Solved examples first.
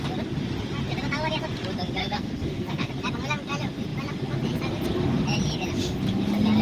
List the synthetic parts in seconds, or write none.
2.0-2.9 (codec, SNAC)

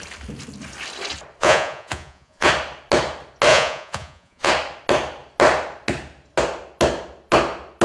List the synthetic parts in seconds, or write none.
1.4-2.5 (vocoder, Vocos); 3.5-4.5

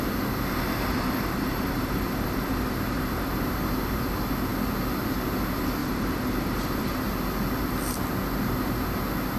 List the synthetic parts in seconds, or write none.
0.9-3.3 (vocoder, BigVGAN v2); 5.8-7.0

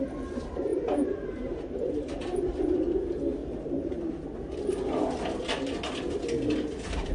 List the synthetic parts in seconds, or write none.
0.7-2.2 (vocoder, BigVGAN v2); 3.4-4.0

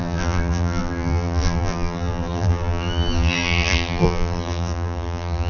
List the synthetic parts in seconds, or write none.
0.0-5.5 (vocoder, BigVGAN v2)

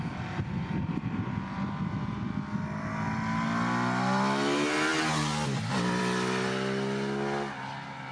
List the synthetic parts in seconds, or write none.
none

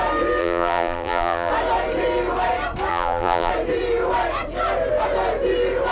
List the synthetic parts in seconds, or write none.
0.4-1.5 (vocoder, BigVGAN v2); 2.9-3.5

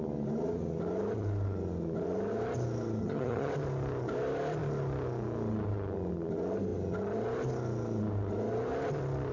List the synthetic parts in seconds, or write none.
3.0-3.5 (vocoder, HiFi-GAN)